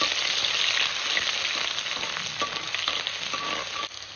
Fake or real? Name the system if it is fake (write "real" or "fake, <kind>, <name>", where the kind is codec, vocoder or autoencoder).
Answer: real